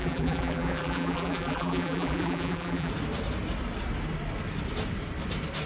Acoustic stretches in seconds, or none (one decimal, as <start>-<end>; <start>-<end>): 2.9-5.7